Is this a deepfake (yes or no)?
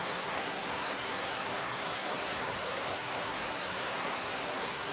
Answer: yes